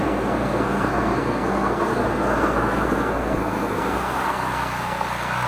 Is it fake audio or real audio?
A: fake